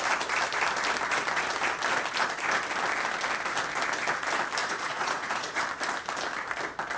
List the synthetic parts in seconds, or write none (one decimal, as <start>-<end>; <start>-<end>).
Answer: 4.6-5.6